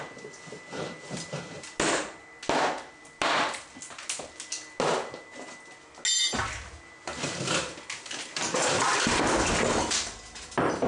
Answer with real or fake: real